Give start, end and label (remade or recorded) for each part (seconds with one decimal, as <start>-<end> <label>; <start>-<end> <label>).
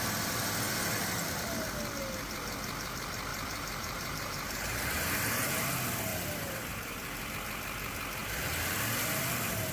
0.0-3.3 recorded; 3.3-5.1 remade; 5.1-6.1 recorded; 6.1-7.3 remade; 7.3-8.2 recorded; 8.2-8.7 remade; 8.7-9.7 recorded